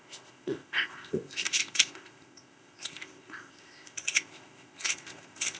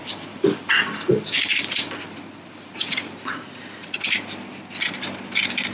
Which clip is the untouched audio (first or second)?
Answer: second